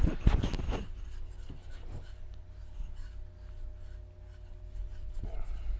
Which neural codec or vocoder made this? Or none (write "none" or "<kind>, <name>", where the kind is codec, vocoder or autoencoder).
none